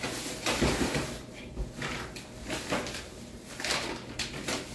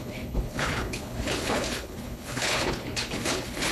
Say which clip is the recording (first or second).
first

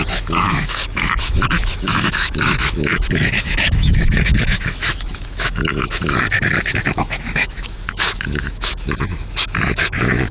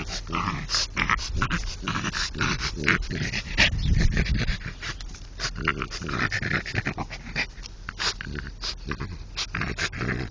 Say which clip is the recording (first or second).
second